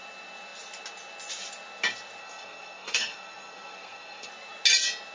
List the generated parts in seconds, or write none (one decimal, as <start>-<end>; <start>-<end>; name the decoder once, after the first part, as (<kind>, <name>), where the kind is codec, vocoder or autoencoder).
2.2-4.3 (codec, SNAC)